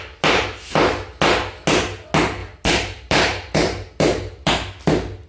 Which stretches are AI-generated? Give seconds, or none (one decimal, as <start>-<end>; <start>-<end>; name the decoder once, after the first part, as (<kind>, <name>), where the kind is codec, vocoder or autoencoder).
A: 2.4-4.5 (vocoder, BigVGAN v2)